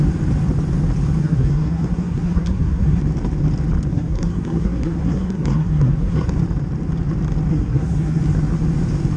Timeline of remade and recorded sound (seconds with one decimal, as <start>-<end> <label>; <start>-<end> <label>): 0.0-1.2 recorded; 1.2-3.0 remade; 3.0-3.9 recorded; 3.9-6.3 remade; 6.3-7.5 recorded; 7.5-8.2 remade; 8.2-9.2 recorded